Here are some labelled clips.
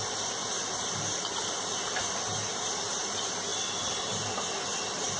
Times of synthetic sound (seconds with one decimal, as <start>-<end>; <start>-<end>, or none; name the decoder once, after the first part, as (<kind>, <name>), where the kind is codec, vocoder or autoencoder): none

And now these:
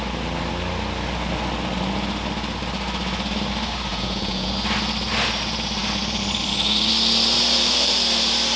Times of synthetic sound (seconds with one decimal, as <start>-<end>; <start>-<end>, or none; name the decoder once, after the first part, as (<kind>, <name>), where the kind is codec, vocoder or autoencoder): 3.9-4.5 (vocoder, Vocos)

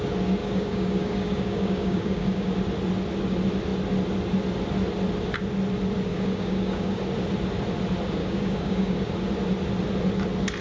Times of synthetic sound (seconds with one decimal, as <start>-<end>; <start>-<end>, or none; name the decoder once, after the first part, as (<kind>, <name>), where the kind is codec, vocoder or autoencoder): 0.4-2.5 (codec, DAC); 6.1-7.0; 8.2-9.1